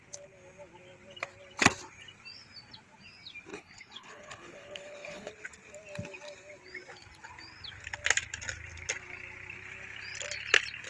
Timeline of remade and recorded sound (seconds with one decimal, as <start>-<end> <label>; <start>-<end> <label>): 0.0-3.5 recorded; 3.5-5.3 remade; 5.3-10.9 recorded

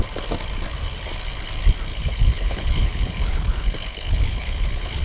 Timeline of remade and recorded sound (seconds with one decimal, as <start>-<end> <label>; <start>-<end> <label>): 0.0-1.9 recorded; 1.9-5.0 remade